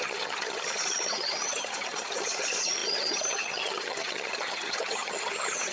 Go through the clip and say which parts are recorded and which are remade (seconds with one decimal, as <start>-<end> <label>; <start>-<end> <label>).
0.0-5.7 remade